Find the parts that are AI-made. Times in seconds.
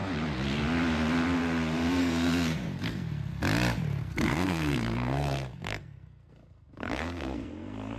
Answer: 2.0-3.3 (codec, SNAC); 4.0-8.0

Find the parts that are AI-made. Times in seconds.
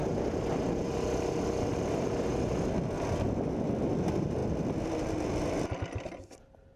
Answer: none